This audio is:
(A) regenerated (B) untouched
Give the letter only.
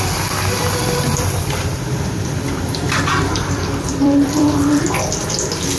A